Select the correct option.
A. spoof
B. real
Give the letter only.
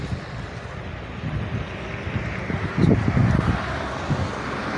B